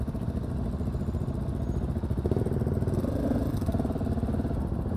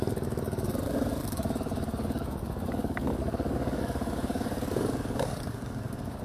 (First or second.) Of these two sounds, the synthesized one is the second